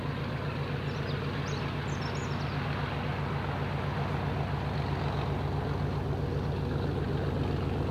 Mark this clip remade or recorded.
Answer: recorded